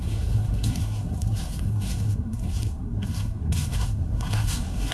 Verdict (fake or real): fake